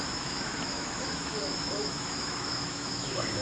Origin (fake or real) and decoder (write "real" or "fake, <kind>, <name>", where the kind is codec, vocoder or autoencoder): fake, autoencoder, DAC-VAE